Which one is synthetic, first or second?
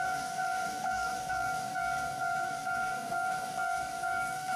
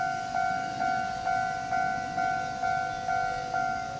first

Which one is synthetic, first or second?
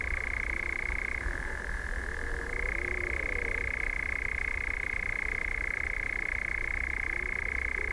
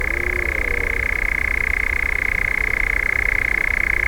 first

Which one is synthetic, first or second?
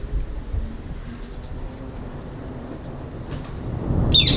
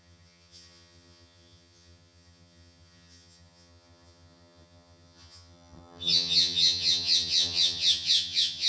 second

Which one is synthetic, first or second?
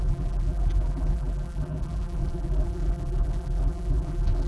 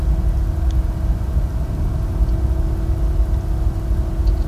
first